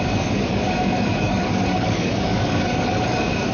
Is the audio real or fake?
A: fake